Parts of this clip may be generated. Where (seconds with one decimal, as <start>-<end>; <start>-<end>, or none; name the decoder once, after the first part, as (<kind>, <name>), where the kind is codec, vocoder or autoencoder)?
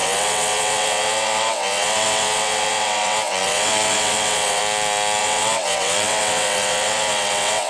0.0-4.6 (vocoder, WaveNeXt); 5.2-7.7